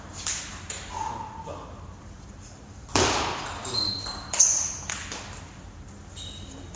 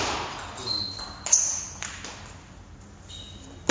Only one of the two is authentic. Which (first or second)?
second